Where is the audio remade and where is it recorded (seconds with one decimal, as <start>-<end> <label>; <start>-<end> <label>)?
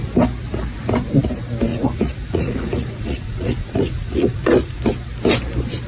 0.0-1.7 recorded; 1.7-4.8 remade; 4.8-5.9 recorded